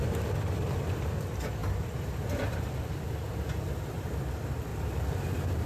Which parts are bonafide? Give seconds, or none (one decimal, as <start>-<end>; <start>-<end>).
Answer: 0.0-1.6; 3.6-4.7; 5.3-5.7